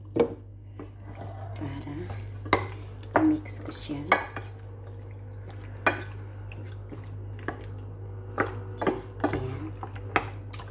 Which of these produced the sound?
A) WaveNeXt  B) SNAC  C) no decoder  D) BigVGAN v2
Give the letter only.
C